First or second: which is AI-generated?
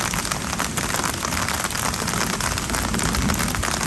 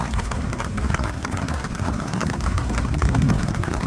second